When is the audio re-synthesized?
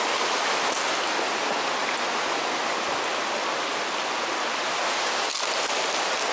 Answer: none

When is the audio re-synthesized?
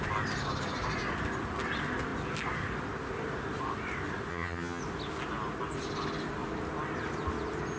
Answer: 4.3-4.8 (vocoder, HiFi-GAN)